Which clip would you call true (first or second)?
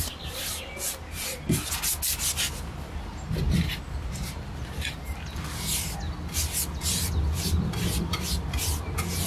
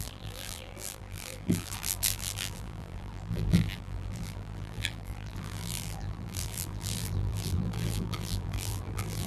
first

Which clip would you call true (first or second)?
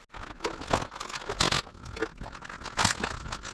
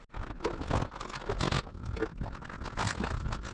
first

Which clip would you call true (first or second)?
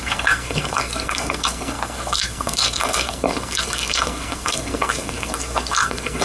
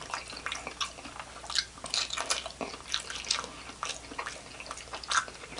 second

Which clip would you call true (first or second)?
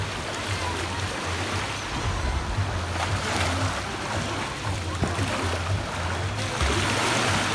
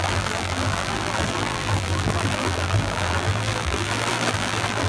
first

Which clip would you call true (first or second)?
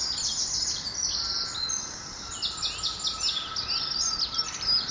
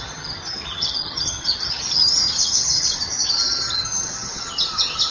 first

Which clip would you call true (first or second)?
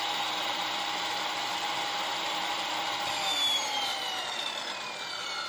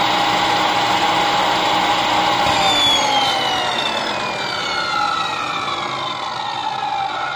second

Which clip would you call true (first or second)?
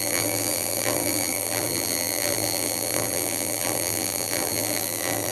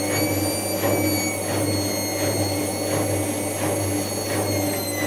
second